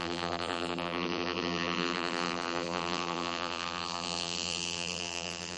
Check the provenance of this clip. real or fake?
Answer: fake